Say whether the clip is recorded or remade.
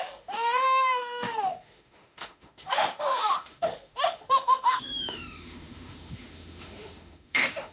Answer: remade